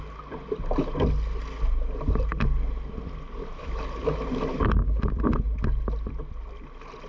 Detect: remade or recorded recorded